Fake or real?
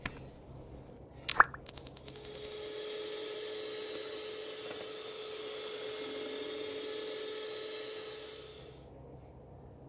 real